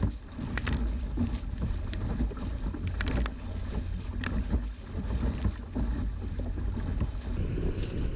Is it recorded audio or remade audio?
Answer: recorded